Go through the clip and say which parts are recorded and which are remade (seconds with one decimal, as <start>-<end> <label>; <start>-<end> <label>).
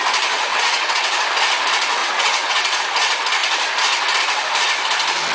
0.0-0.5 recorded; 0.5-1.2 remade; 1.2-2.0 recorded; 2.0-2.8 remade; 2.8-5.3 recorded